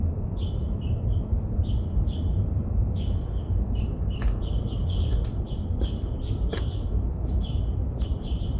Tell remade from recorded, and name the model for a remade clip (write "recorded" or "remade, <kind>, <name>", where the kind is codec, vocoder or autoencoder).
remade, vocoder, BigVGAN v2